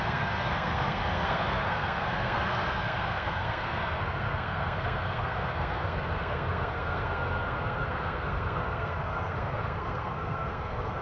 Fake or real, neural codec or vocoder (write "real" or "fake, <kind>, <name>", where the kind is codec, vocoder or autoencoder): fake, codec, SNAC